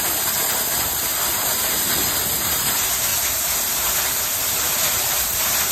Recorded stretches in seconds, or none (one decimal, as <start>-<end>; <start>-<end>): 0.0-5.7